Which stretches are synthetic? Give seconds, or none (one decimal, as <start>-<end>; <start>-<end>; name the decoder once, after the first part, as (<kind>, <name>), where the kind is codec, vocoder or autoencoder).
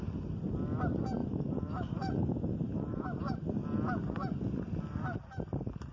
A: 1.2-3.2 (autoencoder, DAC-VAE)